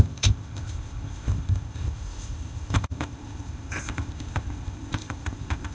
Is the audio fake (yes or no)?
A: yes